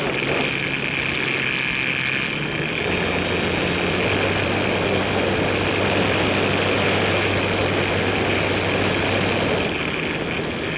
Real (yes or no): yes